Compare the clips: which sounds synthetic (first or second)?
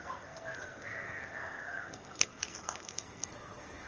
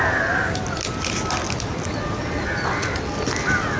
first